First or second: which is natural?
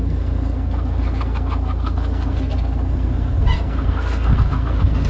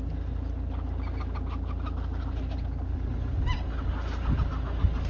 second